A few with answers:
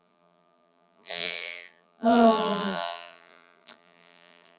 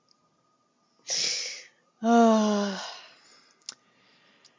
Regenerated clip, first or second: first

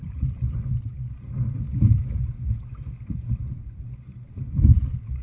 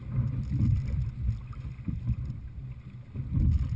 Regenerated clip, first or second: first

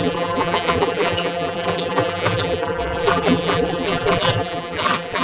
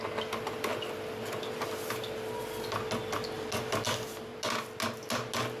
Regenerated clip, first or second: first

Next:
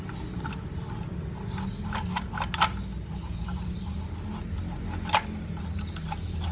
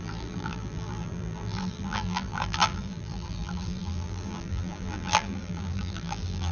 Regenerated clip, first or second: second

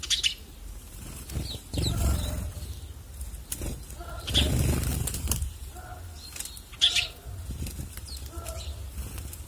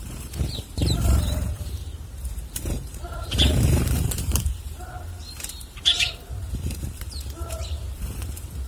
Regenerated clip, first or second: second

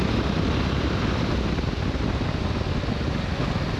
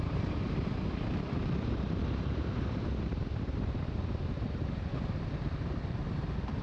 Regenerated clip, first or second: second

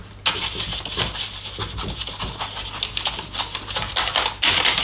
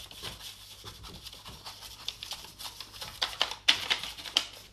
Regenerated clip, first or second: second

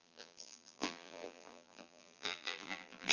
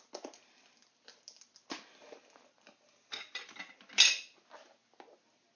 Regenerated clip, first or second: first